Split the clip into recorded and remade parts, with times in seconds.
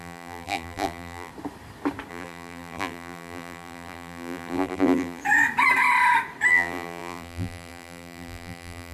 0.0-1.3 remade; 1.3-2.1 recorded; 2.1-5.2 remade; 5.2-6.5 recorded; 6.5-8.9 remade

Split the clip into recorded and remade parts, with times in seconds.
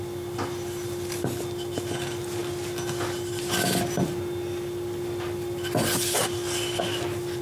0.0-7.4 recorded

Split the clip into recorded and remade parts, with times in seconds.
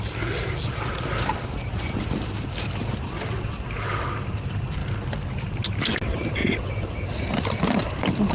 0.0-6.4 recorded; 6.4-8.3 remade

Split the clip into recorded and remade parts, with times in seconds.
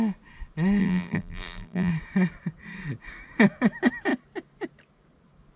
0.0-0.8 recorded; 0.8-1.9 remade; 1.9-5.6 recorded